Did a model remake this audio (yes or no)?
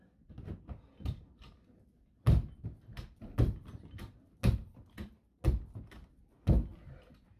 no